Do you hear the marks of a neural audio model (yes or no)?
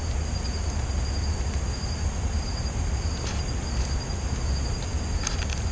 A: no